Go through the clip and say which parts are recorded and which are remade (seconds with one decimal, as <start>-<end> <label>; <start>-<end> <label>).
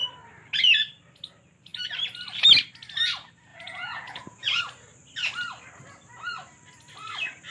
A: 0.0-3.5 recorded; 3.5-4.6 remade; 4.6-7.5 recorded